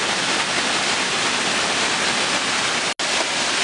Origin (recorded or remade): recorded